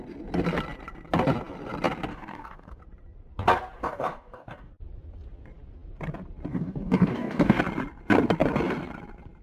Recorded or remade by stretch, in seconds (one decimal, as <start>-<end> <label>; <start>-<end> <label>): 0.0-2.1 recorded; 2.1-2.8 remade; 2.8-3.8 recorded; 3.8-4.7 remade; 4.7-6.5 recorded; 6.5-7.6 remade; 7.6-9.4 recorded

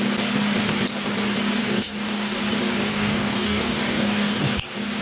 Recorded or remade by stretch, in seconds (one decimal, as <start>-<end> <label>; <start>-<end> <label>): 0.0-1.6 recorded; 1.6-2.4 remade; 2.4-2.9 recorded; 2.9-4.4 remade; 4.4-5.0 recorded

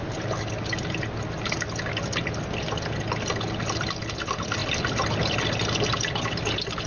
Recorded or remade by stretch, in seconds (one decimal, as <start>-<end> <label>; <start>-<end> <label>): 0.0-6.9 recorded

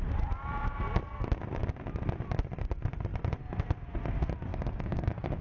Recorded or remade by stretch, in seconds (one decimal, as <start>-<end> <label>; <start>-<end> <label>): 0.0-4.5 recorded; 4.5-5.4 remade

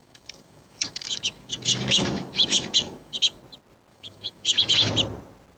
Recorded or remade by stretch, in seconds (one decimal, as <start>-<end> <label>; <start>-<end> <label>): 0.0-3.4 remade; 3.4-3.9 recorded; 3.9-4.9 remade; 4.9-5.6 recorded

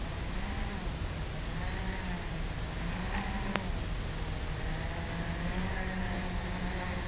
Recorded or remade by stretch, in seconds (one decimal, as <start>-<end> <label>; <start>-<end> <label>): 0.0-5.5 recorded; 5.5-6.2 remade; 6.2-7.1 recorded